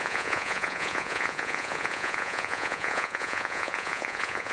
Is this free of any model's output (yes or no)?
no